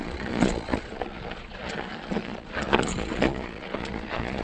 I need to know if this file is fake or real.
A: fake